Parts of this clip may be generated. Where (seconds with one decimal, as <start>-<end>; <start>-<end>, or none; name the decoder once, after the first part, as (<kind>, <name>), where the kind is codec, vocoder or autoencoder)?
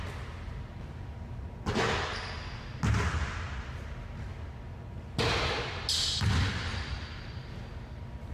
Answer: none